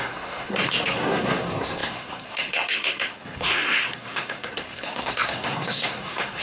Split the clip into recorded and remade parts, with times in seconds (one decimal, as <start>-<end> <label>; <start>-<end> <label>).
0.0-6.4 remade